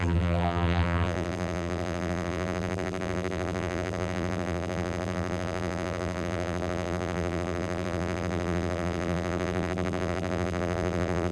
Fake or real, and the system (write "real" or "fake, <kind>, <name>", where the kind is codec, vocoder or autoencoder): fake, vocoder, BigVGAN v2